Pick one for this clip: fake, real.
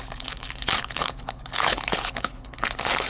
fake